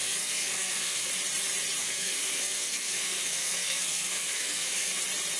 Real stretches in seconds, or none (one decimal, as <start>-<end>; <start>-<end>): 1.1-1.8; 5.0-5.4